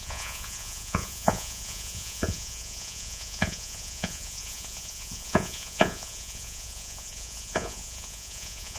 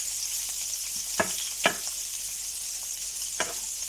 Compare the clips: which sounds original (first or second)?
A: second